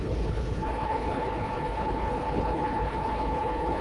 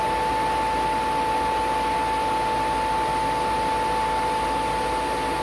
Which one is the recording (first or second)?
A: second